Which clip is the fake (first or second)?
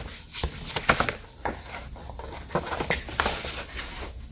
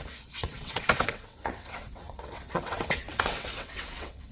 second